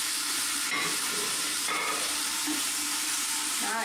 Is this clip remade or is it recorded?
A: remade